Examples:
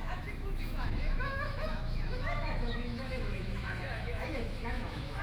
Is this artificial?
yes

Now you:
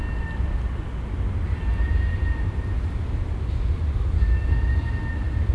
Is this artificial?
no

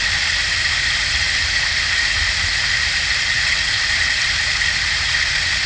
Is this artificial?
no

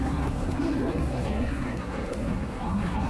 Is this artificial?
yes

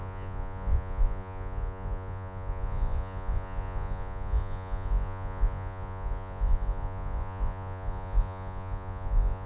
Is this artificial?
yes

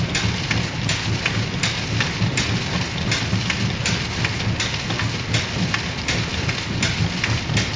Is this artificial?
no